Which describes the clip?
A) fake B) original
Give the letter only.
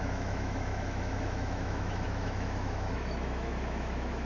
A